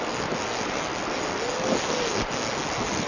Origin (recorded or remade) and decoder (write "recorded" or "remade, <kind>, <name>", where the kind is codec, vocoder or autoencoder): recorded